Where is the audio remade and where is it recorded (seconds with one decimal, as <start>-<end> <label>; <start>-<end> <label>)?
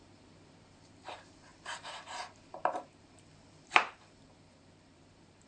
0.0-5.5 remade